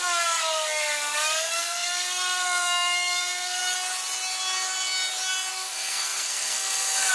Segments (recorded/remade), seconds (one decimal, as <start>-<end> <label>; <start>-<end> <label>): 0.0-3.6 remade; 3.6-5.5 recorded; 5.5-7.1 remade